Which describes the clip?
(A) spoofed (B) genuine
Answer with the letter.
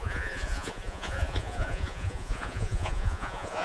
A